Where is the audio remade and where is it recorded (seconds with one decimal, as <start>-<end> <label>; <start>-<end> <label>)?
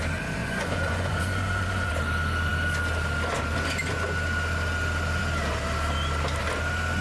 0.0-0.4 recorded; 0.4-1.9 remade; 1.9-7.0 recorded